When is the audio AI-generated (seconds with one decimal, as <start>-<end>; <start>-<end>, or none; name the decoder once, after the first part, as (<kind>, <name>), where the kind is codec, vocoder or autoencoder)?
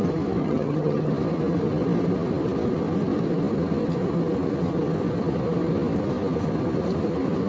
0.4-1.1 (vocoder, HiFi-GAN)